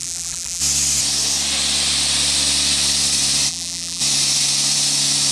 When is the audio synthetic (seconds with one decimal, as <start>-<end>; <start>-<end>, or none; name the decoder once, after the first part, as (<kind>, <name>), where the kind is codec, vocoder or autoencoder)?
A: 0.0-0.6 (vocoder, BigVGAN v2); 3.5-4.0